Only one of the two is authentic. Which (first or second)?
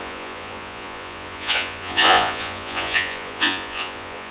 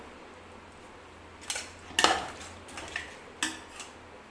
second